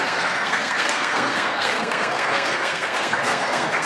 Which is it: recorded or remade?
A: remade